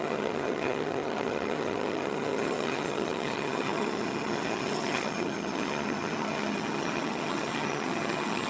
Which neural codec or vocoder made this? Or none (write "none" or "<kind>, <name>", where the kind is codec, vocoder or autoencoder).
vocoder, HiFi-GAN